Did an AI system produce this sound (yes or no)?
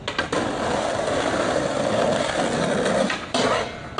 no